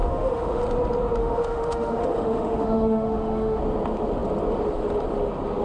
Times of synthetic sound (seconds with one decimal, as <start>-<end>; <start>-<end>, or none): 0.0-0.6; 1.2-3.6